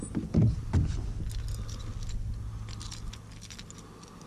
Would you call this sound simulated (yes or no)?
no